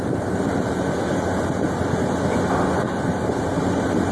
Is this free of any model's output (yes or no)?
yes